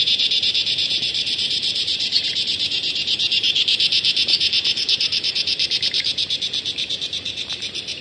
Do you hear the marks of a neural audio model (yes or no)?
yes